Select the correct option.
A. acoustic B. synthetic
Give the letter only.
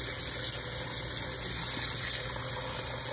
A